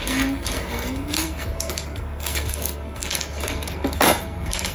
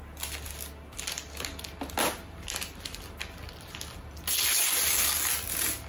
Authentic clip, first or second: second